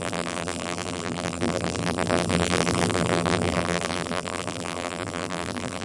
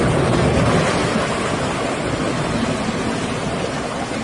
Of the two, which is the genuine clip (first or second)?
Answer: second